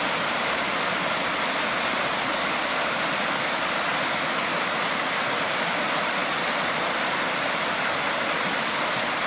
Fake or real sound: real